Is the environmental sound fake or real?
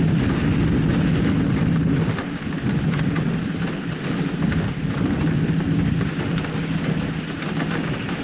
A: real